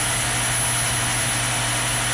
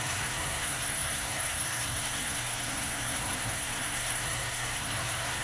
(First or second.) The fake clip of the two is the second